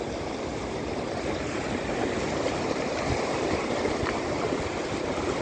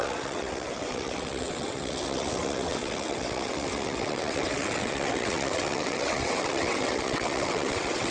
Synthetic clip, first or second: second